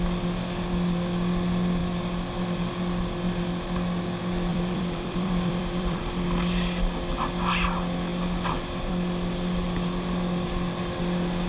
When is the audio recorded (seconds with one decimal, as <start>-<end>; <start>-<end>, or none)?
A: 0.0-4.5; 6.0-8.1; 8.9-11.5